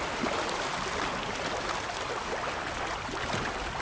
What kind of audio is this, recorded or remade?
recorded